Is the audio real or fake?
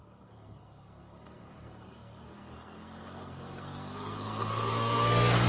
fake